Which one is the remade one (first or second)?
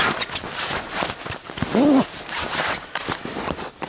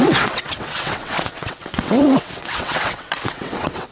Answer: second